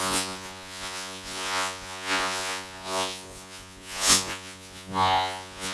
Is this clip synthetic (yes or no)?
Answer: yes